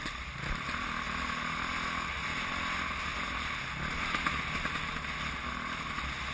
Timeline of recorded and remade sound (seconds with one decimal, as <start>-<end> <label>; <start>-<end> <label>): 0.0-6.3 recorded